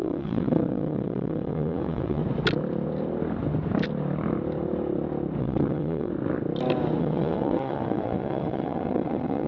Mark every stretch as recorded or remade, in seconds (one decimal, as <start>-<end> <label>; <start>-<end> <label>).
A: 0.0-2.2 remade; 2.2-5.4 recorded; 5.4-6.1 remade; 6.1-7.0 recorded; 7.0-9.5 remade